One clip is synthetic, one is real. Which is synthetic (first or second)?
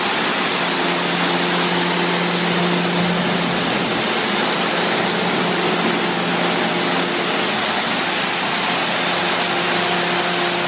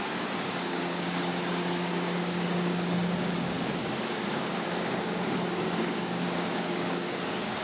second